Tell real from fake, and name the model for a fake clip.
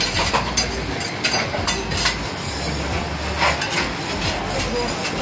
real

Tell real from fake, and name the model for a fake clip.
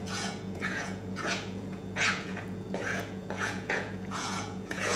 fake, vocoder, Vocos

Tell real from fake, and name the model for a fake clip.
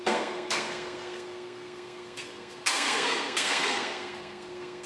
fake, codec, SNAC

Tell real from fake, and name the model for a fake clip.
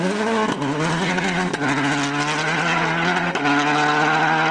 real